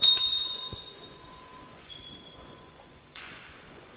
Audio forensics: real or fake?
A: fake